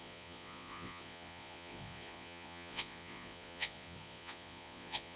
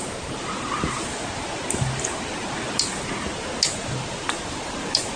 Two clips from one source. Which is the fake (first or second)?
first